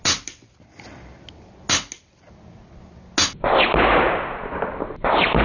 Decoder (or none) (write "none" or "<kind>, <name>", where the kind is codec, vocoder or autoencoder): none